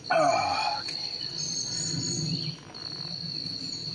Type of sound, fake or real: real